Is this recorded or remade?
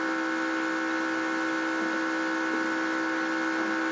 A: recorded